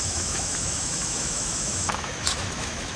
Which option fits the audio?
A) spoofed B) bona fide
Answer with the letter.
A